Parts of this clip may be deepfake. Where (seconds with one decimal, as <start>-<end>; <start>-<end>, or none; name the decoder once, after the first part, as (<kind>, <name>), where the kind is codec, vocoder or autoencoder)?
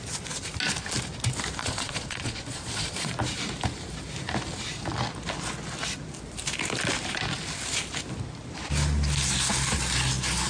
1.6-3.1 (vocoder, Vocos)